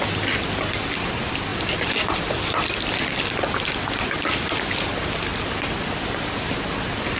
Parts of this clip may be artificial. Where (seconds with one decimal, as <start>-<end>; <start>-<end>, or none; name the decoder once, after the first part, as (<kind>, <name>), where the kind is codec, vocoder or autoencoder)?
none